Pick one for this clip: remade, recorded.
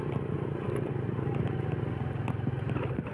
recorded